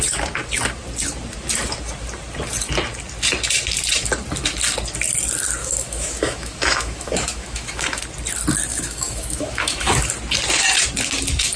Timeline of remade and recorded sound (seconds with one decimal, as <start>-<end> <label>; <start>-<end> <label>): 0.0-5.6 recorded; 5.6-8.0 remade; 8.0-8.7 recorded; 8.7-10.0 remade; 10.0-11.6 recorded